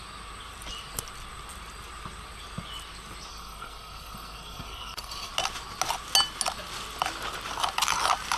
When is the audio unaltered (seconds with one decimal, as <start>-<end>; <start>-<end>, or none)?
0.0-3.3; 5.3-8.4